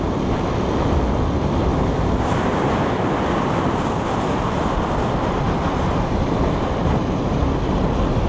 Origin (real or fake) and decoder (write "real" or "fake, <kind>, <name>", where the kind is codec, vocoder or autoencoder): real